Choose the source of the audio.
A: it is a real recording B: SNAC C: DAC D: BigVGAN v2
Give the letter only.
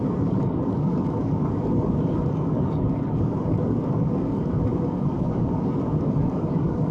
C